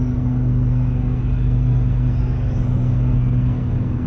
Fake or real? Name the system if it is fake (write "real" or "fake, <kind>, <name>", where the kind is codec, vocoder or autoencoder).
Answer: fake, codec, SNAC